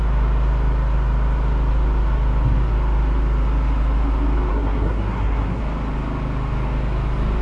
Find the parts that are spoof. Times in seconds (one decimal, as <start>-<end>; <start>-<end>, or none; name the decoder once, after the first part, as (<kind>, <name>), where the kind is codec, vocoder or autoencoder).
4.5-5.6 (codec, SNAC)